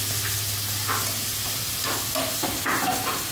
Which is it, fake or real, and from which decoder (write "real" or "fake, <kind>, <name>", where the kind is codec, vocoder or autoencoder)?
real